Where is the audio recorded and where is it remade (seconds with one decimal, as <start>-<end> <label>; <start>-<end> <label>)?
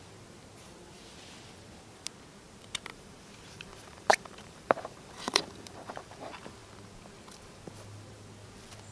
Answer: 0.0-2.9 recorded; 2.9-5.9 remade; 5.9-8.9 recorded